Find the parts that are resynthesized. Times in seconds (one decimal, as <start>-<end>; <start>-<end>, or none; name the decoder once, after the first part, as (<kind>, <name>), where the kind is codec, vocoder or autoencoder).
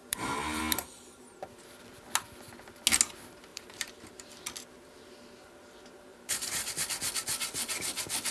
0.0-0.6 (vocoder, BigVGAN v2); 3.5-4.3; 6.1-6.7